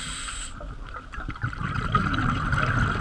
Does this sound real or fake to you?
real